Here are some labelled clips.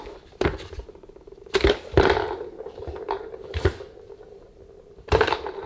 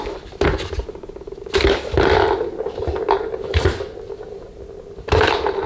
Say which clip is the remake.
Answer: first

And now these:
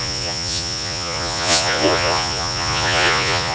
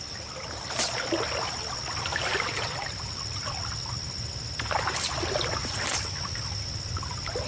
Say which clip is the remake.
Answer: first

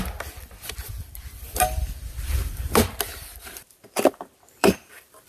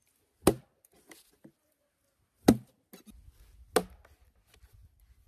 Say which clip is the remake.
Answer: first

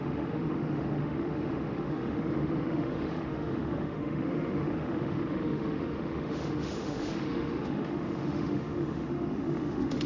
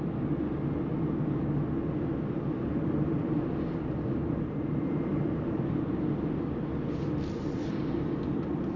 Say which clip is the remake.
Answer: first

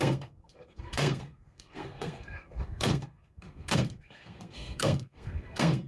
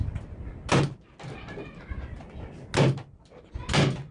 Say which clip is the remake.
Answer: first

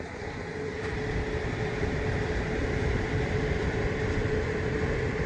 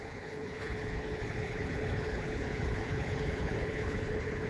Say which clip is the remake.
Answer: second